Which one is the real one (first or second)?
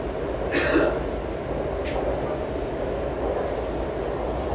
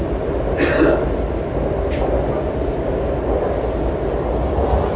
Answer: first